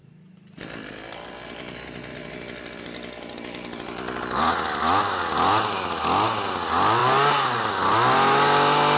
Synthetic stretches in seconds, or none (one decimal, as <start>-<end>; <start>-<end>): none

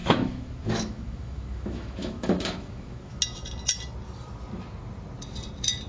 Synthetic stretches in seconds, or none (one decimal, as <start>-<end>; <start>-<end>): 0.0-3.2

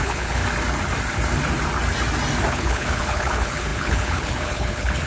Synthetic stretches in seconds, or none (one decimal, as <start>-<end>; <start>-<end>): 0.0-0.4; 2.5-5.1

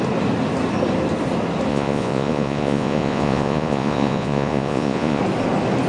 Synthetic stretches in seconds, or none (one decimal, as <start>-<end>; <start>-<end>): 1.7-5.2

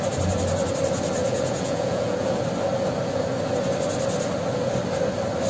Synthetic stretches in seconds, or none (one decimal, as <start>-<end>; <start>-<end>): 1.2-2.4

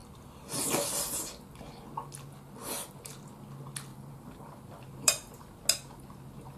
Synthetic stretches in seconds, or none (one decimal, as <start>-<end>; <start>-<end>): 3.9-5.6

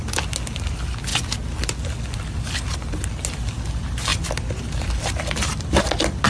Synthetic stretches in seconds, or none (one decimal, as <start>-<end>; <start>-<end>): none